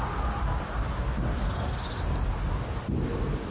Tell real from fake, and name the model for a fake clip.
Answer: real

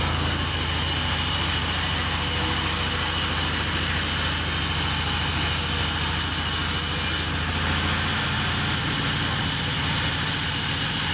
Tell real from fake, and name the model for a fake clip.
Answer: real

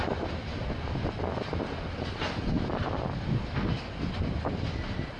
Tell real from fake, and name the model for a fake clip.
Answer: real